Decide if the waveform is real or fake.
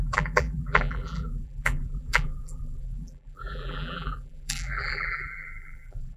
fake